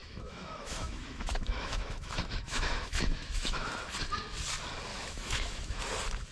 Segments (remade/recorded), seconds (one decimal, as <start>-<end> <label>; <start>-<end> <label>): 0.0-3.8 remade; 3.8-4.9 recorded; 4.9-5.8 remade; 5.8-6.3 recorded